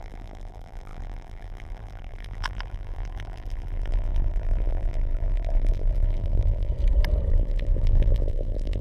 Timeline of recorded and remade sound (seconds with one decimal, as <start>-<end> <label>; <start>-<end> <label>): 0.0-6.7 remade; 6.7-7.3 recorded; 7.3-8.8 remade